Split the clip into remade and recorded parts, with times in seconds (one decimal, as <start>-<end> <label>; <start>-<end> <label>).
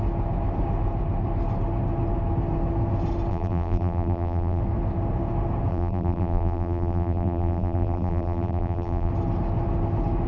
0.0-3.3 recorded; 3.3-4.6 remade; 4.6-5.7 recorded; 5.7-9.1 remade; 9.1-10.3 recorded